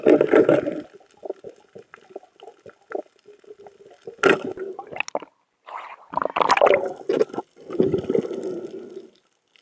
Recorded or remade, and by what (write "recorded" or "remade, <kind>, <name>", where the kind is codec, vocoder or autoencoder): recorded